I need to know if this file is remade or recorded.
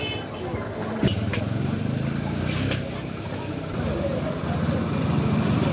recorded